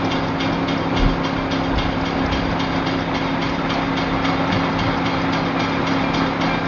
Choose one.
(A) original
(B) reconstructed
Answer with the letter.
A